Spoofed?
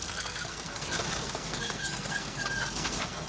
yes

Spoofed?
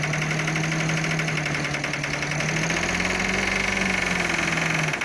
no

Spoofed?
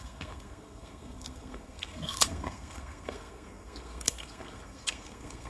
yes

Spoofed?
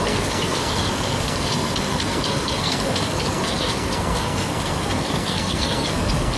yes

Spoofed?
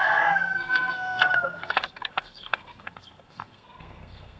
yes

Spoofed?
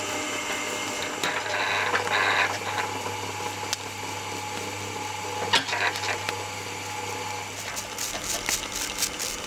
no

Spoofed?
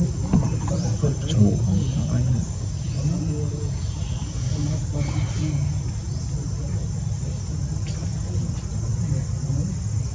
no